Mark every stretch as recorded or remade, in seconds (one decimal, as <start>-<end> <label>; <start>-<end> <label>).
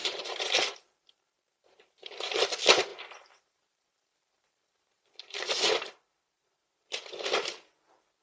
0.0-0.5 remade; 0.5-1.5 recorded; 1.5-2.4 remade; 2.4-2.9 recorded; 2.9-7.1 remade; 7.1-8.2 recorded